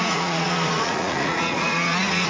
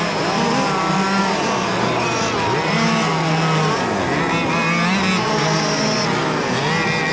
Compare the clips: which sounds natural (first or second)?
second